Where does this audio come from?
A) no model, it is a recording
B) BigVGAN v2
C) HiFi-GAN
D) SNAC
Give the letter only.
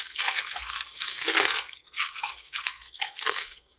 D